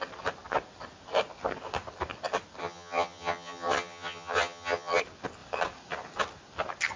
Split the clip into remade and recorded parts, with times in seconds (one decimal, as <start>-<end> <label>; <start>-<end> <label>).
0.0-2.6 recorded; 2.6-5.0 remade; 5.0-7.0 recorded